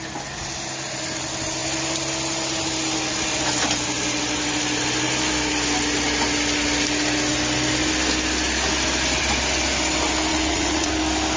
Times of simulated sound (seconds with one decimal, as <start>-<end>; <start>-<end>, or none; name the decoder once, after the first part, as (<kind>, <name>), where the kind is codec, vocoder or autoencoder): 10.3-10.9 (vocoder, WaveNeXt)